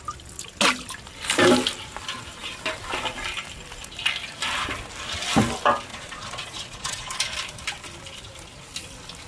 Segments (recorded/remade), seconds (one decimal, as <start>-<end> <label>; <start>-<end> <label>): 0.0-5.9 recorded; 5.9-7.1 remade; 7.1-9.3 recorded